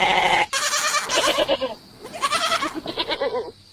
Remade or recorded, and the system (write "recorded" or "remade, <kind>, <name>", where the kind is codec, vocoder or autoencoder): recorded